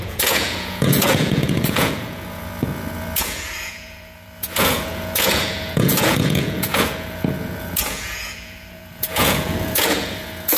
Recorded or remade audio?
remade